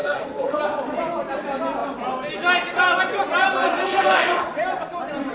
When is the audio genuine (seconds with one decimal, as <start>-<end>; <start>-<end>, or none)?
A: 0.6-3.8; 4.4-5.3